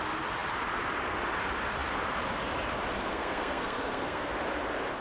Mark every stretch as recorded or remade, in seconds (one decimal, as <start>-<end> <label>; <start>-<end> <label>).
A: 0.0-3.1 recorded; 3.1-4.3 remade; 4.3-5.0 recorded